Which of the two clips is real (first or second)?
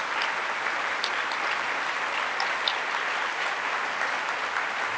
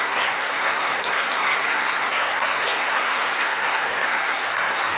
first